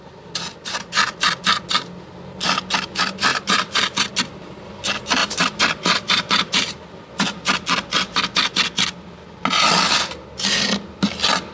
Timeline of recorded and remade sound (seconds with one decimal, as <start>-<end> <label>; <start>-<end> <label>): 0.0-3.3 recorded; 3.3-4.1 remade; 4.1-5.2 recorded; 5.2-6.9 remade; 6.9-11.5 recorded